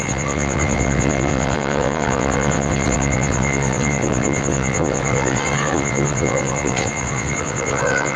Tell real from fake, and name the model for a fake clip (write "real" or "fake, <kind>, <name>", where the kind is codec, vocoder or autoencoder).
fake, vocoder, WaveNeXt